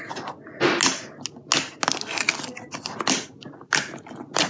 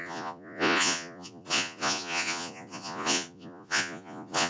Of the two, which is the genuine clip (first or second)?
first